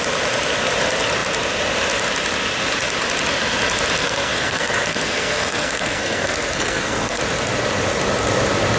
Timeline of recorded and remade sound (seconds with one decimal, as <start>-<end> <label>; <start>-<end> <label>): 0.0-4.0 recorded; 4.0-7.2 remade; 7.2-8.8 recorded

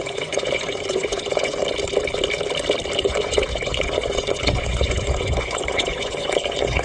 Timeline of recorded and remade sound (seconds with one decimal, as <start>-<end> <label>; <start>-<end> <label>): 0.0-1.6 remade; 1.6-3.0 recorded; 3.0-6.8 remade

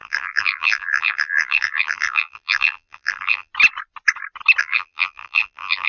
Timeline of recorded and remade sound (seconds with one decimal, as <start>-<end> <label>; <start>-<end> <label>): 0.0-3.5 remade; 3.5-4.6 recorded; 4.6-5.9 remade

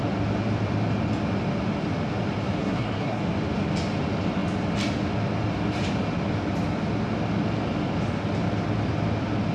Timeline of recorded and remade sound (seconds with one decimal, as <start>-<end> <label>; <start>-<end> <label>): 0.0-2.6 recorded; 2.6-3.2 remade; 3.2-9.5 recorded

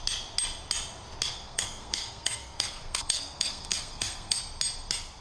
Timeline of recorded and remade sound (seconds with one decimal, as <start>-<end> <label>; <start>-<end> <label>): 0.0-1.3 recorded; 1.3-4.4 remade; 4.4-5.2 recorded

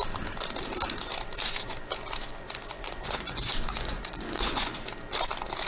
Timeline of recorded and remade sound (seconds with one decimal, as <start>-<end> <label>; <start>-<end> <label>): 0.0-2.3 recorded; 2.3-4.8 remade; 4.8-5.7 recorded